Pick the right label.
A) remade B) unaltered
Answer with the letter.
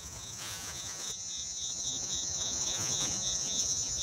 A